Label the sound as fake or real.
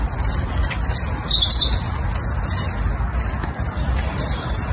real